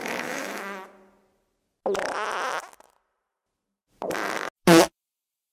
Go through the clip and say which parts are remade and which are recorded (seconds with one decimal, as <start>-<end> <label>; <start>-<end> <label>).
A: 0.0-0.6 remade; 0.6-5.5 recorded